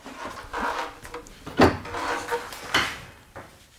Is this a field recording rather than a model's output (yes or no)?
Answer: yes